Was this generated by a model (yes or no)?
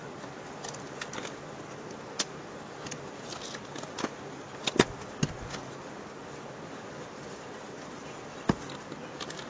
no